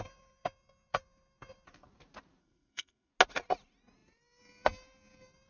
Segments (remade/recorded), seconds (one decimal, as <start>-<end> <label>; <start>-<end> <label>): 0.0-2.4 recorded; 2.4-3.1 remade; 3.1-5.5 recorded